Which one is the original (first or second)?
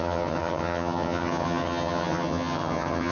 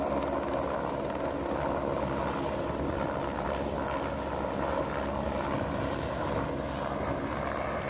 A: second